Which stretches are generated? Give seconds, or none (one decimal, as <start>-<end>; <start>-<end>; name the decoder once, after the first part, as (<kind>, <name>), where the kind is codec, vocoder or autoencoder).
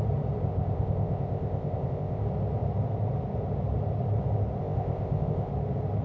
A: 0.4-2.2 (codec, ZipCodec); 4.6-5.5